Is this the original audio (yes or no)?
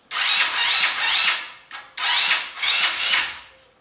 yes